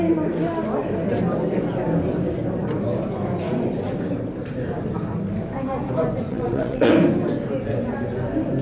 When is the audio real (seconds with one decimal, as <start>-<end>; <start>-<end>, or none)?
0.0-6.3; 6.9-8.6